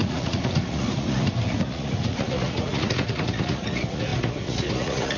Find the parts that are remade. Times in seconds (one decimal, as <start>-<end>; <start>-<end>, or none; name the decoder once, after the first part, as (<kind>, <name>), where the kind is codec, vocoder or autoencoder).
0.0-5.2 (vocoder, Vocos)